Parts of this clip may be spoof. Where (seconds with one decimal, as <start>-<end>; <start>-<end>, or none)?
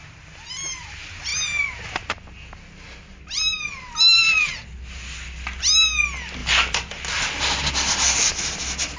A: 0.0-0.9; 6.4-7.7